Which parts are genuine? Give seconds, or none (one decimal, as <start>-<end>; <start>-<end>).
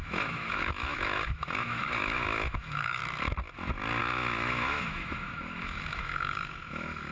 3.0-4.0